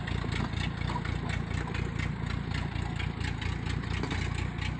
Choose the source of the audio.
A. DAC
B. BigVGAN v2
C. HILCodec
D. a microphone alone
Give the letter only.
D